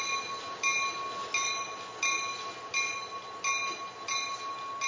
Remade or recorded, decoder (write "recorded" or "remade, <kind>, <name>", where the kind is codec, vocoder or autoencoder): recorded